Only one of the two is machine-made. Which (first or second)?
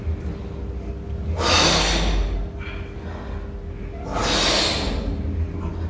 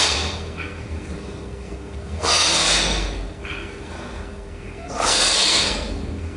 second